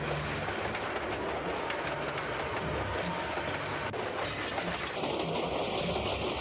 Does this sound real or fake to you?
real